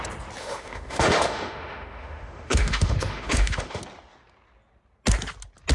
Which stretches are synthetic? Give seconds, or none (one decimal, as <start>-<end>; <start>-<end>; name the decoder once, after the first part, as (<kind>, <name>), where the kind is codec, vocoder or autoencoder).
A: 0.4-3.8 (autoencoder, DAC-VAE)